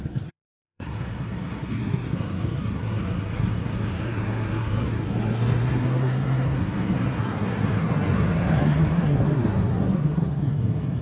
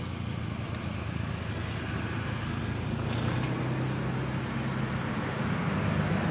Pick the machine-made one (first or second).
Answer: first